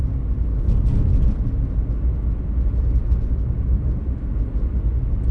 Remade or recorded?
recorded